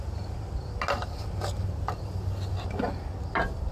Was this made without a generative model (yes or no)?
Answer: yes